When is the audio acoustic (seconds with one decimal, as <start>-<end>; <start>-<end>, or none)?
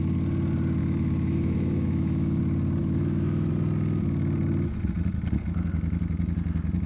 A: 0.0-0.8; 2.4-2.8; 3.5-6.9